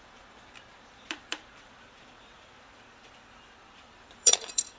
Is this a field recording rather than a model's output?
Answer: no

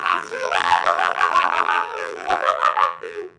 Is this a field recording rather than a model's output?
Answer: no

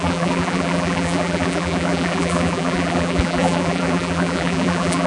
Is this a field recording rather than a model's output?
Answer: no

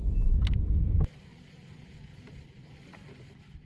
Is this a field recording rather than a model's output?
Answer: yes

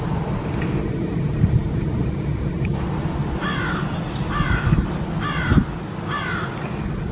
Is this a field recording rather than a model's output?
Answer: yes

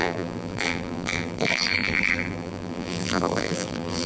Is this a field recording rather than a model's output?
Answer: no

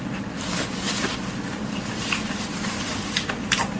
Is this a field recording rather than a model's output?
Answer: no